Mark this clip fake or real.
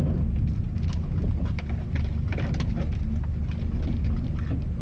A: real